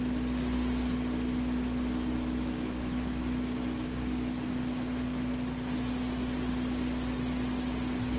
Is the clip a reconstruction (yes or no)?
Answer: no